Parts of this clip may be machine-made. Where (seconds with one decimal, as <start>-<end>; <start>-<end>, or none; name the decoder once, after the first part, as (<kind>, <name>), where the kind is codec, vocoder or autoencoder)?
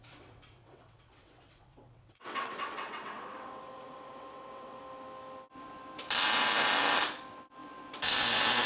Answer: 0.0-4.8 (vocoder, WaveNeXt)